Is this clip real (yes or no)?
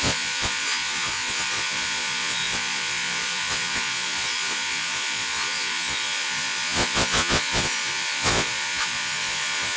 no